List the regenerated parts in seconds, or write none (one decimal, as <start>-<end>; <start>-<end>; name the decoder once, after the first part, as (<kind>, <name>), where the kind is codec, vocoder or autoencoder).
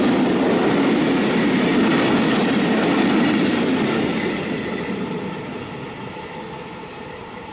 none